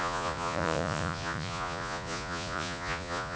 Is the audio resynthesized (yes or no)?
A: yes